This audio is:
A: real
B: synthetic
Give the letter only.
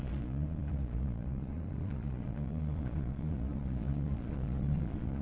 B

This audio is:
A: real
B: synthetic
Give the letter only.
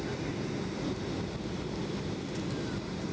B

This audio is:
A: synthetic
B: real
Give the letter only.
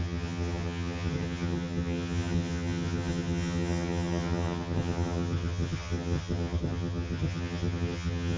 A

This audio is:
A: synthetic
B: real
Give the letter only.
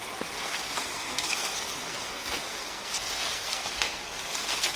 A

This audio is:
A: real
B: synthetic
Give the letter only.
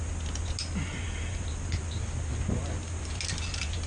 A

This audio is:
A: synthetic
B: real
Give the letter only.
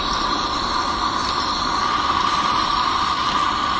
B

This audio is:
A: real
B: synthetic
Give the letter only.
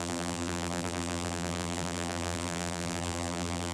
B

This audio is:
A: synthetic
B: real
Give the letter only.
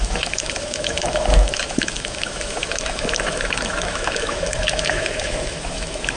A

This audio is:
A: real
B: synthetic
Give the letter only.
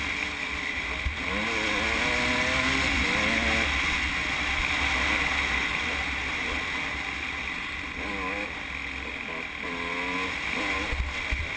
A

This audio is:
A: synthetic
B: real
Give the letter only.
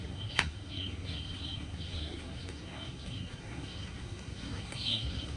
A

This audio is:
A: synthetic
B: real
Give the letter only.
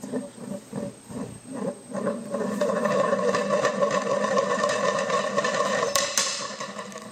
A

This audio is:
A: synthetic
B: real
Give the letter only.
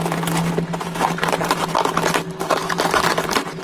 B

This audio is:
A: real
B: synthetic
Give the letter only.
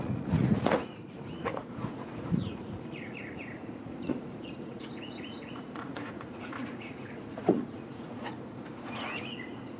B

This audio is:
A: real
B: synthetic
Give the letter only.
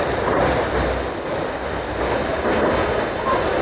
A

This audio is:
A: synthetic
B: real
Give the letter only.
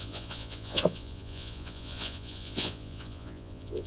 A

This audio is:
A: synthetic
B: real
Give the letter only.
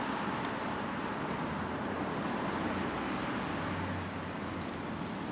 B